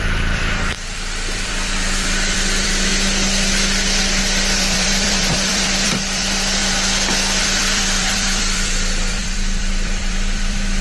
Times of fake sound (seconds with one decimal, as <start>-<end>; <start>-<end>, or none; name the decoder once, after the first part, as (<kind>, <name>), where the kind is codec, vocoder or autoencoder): 0.0-2.9 (vocoder, BigVGAN v2); 4.2-6.6; 7.4-10.8